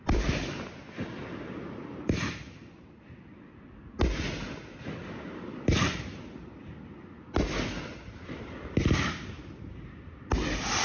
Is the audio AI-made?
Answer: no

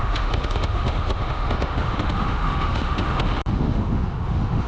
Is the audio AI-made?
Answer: yes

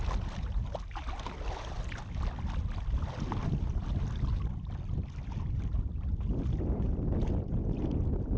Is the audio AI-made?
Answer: no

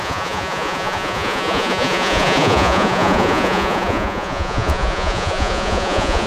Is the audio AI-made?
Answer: yes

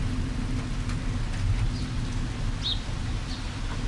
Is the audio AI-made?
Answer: no